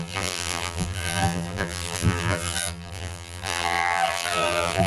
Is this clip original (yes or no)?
no